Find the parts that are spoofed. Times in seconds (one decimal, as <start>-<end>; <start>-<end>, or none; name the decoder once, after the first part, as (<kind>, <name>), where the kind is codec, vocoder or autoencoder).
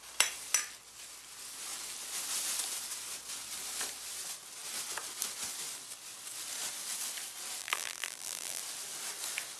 7.6-8.6 (vocoder, BigVGAN v2)